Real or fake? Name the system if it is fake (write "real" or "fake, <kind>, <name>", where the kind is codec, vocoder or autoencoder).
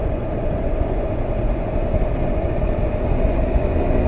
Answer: fake, vocoder, Vocos